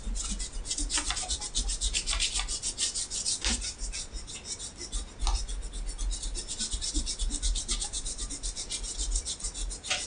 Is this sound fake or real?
real